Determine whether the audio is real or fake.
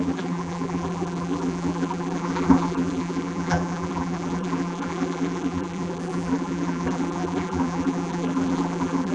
fake